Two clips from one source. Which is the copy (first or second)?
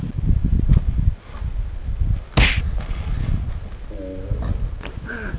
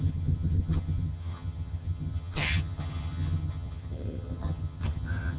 second